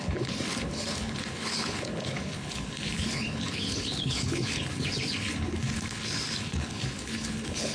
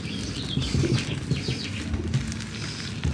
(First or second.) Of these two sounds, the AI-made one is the first